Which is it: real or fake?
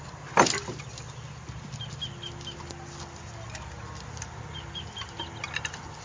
real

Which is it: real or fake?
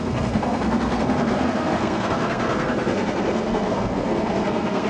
fake